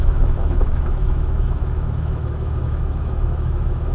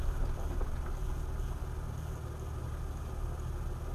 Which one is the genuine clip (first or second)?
second